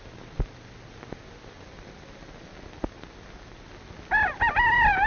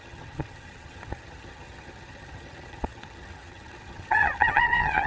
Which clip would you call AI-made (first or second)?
second